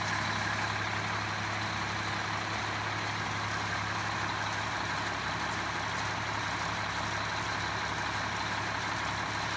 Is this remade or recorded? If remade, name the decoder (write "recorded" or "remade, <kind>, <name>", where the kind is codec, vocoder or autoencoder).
recorded